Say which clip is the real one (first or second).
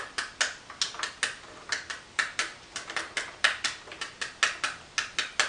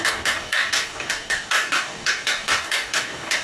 first